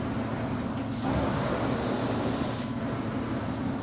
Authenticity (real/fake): real